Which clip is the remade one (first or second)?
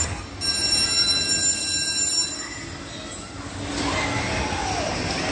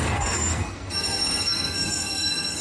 second